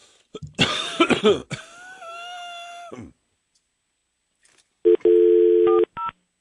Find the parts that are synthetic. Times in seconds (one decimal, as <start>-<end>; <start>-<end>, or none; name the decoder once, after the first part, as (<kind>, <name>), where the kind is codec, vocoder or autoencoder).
0.0-1.2 (vocoder, BigVGAN v2)